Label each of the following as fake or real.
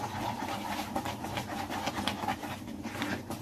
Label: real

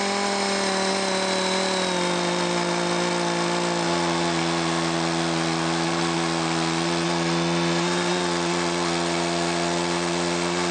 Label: real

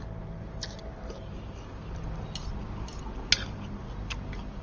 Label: real